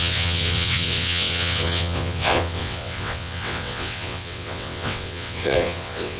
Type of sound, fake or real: fake